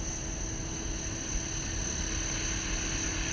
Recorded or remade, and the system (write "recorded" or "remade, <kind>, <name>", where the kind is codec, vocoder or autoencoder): recorded